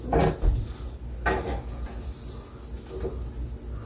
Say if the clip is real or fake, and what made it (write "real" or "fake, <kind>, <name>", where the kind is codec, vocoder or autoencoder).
real